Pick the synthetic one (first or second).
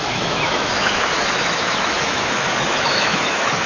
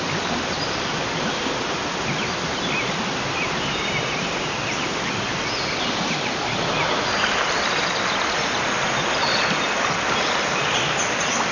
first